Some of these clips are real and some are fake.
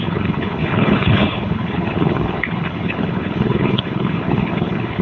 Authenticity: fake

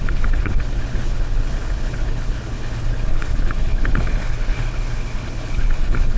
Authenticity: fake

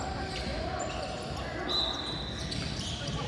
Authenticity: real